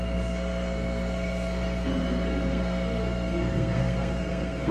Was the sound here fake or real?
fake